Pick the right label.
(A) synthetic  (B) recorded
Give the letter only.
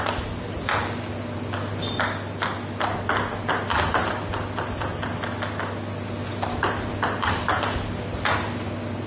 B